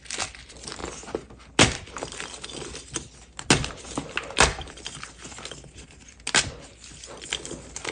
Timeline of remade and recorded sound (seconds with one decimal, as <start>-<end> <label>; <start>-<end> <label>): 0.0-7.9 recorded